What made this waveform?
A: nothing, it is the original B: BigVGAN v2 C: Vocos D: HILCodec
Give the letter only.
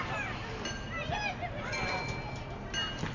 A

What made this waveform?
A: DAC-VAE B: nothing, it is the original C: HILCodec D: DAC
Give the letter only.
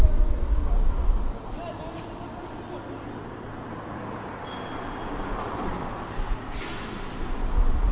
B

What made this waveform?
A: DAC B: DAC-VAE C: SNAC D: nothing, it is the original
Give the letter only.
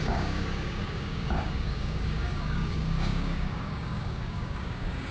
A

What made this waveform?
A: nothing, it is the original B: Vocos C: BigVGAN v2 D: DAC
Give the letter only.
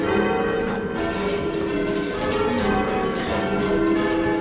A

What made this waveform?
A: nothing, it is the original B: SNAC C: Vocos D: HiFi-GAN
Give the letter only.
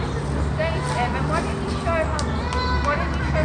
A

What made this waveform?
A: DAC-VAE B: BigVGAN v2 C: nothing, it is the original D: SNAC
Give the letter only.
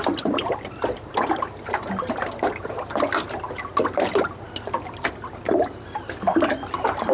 C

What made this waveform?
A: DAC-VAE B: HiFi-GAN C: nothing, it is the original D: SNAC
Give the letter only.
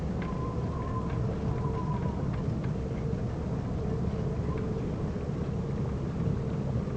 C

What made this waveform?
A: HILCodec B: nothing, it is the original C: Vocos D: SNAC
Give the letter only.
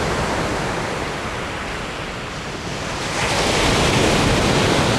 B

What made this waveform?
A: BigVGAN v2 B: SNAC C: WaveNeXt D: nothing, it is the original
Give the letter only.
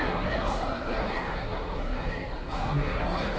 B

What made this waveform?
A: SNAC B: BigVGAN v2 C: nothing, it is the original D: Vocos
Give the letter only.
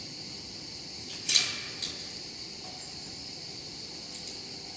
C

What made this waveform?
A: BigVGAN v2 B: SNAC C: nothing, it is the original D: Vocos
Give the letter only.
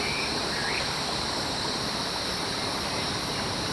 C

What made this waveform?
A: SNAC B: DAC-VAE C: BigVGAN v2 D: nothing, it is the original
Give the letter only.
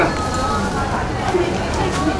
D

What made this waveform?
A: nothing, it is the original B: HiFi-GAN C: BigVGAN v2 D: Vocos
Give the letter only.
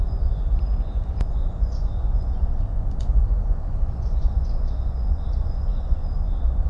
D